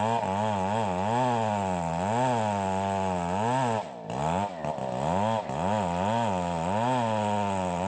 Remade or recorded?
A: recorded